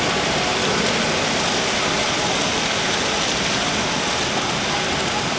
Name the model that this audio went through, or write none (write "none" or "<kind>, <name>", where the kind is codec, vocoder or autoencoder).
none